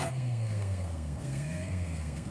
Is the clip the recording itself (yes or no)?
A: no